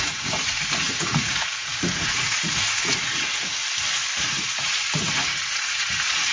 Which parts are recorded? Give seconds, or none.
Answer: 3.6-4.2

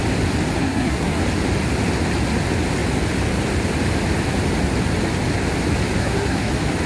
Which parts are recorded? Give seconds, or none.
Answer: 0.0-0.6; 1.2-6.0; 6.5-6.9

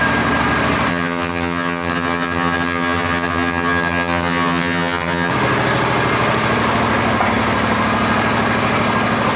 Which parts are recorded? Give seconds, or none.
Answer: 0.0-0.9; 5.3-9.4

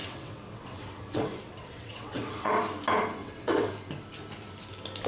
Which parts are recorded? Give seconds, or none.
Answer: 2.5-3.2; 3.7-5.1

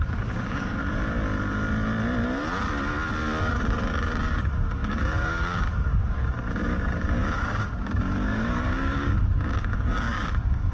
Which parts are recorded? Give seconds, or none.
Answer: 0.8-3.4